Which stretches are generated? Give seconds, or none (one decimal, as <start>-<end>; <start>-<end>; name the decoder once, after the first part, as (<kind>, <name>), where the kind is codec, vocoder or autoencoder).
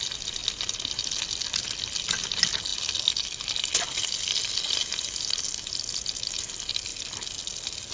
none